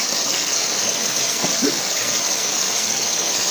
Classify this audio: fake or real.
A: fake